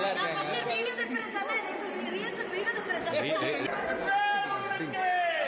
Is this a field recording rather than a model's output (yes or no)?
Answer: yes